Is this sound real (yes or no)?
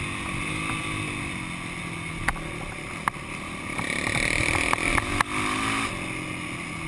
yes